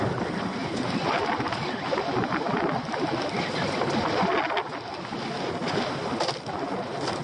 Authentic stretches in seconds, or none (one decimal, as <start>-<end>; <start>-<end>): 0.0-7.2